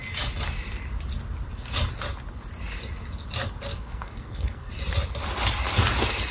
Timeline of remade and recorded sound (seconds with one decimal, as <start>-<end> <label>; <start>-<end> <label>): 0.0-3.7 recorded; 3.7-4.7 remade; 4.7-6.3 recorded